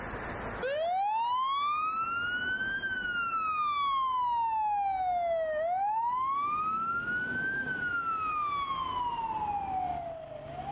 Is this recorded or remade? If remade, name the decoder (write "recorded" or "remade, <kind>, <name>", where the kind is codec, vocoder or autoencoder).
recorded